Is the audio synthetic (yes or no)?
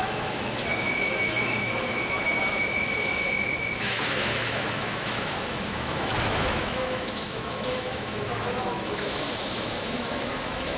yes